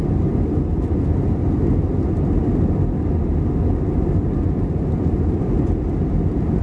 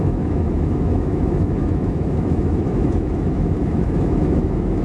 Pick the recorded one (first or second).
first